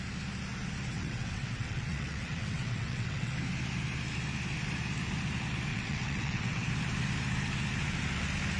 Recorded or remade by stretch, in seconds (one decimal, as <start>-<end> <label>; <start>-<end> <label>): 0.0-0.9 recorded; 0.9-3.3 remade; 3.3-5.7 recorded; 5.7-6.7 remade; 6.7-8.6 recorded